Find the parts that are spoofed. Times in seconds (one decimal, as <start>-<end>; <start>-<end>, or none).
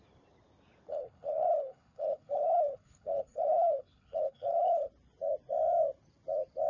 0.9-4.9